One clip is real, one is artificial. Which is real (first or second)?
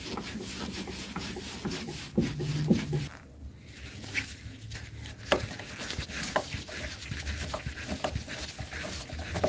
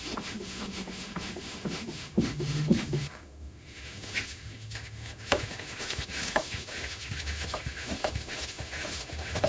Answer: first